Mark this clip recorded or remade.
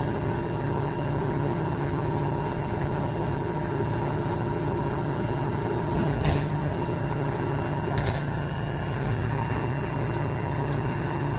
remade